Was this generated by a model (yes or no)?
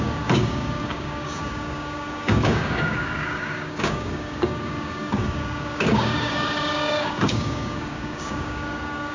yes